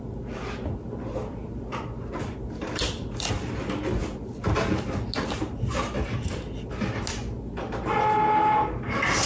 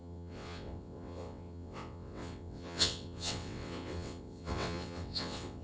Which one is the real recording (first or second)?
first